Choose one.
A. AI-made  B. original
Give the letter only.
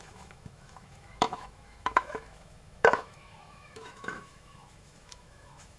A